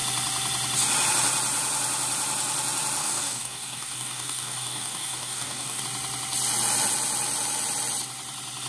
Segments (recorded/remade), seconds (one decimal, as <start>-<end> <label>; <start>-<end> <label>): 0.0-3.0 recorded; 3.0-5.8 remade; 5.8-8.7 recorded